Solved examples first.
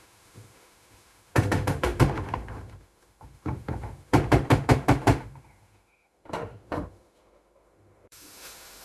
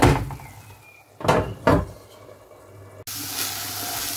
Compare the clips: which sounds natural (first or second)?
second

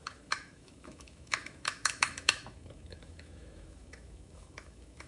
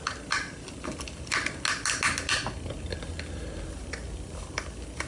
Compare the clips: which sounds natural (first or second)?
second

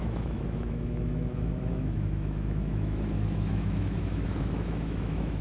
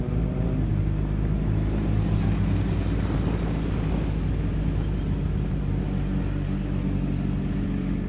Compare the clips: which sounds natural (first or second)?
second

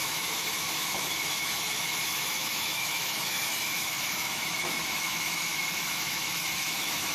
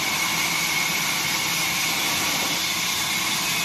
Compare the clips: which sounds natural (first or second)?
second